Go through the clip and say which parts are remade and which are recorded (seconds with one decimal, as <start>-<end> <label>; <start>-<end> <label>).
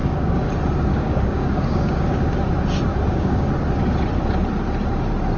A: 0.0-0.5 remade; 0.5-0.9 recorded; 0.9-2.2 remade; 2.2-2.9 recorded; 2.9-3.5 remade; 3.5-5.4 recorded